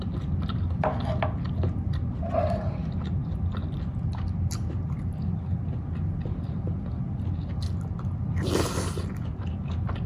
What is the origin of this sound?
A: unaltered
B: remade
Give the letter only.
A